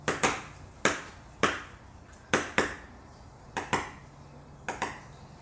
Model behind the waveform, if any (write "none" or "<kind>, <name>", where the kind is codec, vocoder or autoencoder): none